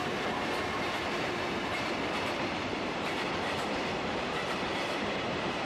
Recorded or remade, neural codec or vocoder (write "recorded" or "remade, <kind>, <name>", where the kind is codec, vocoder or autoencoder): remade, vocoder, BigVGAN v2